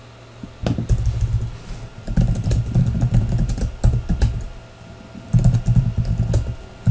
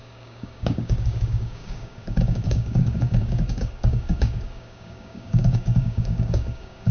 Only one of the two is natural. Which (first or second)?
first